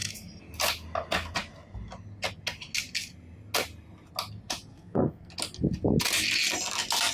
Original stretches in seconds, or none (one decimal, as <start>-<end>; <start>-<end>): 0.0-4.7; 5.3-7.1